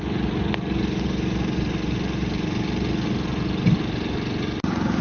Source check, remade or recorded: recorded